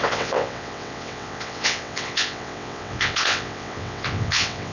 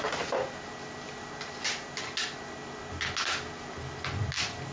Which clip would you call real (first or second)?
second